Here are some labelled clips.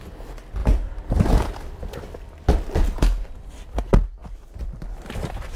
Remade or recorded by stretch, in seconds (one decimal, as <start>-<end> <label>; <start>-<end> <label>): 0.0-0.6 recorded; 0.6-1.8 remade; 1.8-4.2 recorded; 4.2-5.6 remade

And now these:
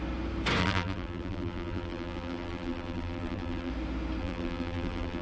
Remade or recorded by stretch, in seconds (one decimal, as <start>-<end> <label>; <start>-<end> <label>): 0.0-0.6 recorded; 0.6-3.7 remade; 3.7-4.2 recorded; 4.2-5.2 remade

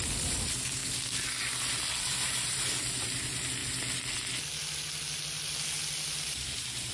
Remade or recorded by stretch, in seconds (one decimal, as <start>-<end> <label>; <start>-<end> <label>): 0.0-0.8 remade; 0.8-2.0 recorded; 2.0-3.6 remade; 3.6-6.2 recorded; 6.2-6.9 remade